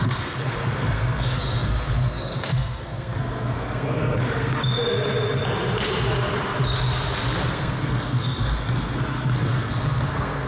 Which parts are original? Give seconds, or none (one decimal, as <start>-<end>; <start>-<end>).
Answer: 4.6-7.5